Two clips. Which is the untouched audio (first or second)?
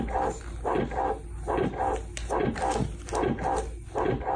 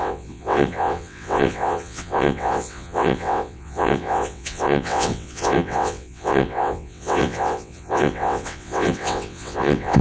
first